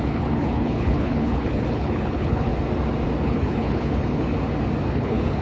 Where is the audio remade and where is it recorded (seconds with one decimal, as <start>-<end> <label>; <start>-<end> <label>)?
0.0-2.5 remade; 2.5-3.2 recorded; 3.2-4.3 remade; 4.3-4.9 recorded; 4.9-5.4 remade